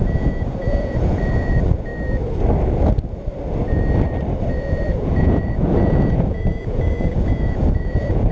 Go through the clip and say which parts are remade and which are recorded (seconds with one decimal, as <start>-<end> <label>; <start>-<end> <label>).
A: 0.0-1.9 remade; 1.9-4.5 recorded; 4.5-8.3 remade